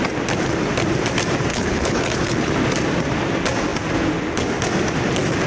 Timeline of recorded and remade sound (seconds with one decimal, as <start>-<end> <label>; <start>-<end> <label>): 0.0-1.5 recorded; 1.5-2.5 remade; 2.5-5.5 recorded

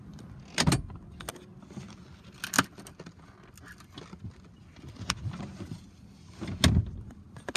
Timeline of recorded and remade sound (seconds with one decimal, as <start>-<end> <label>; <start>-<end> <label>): 0.0-7.6 recorded

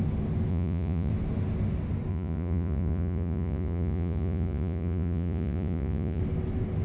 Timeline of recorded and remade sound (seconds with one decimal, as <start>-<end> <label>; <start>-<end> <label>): 0.0-0.5 recorded; 0.5-1.1 remade; 1.1-2.1 recorded; 2.1-6.2 remade; 6.2-6.8 recorded

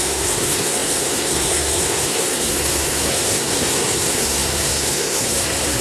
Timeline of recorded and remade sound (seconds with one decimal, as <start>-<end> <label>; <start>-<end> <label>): 0.0-5.8 remade

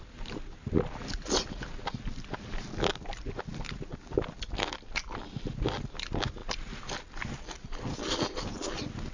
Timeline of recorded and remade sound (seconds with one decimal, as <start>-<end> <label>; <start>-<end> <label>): 0.0-9.1 recorded